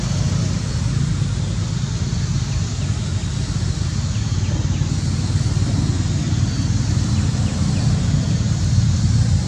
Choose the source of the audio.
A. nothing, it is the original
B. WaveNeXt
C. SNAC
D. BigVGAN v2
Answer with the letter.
A